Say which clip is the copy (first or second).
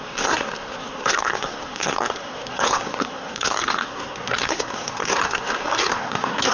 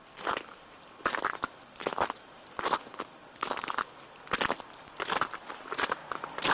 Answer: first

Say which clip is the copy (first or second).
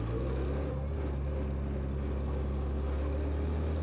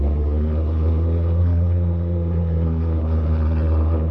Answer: second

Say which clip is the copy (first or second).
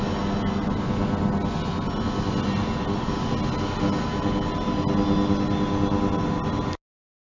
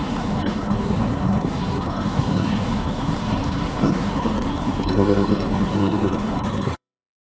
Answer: second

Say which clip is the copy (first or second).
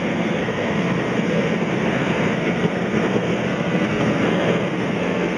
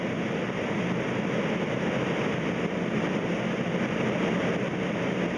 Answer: first